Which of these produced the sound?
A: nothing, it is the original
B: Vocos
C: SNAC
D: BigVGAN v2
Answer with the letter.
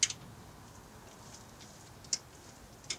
A